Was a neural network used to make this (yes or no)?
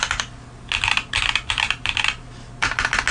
no